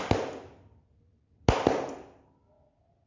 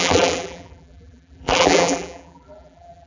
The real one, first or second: first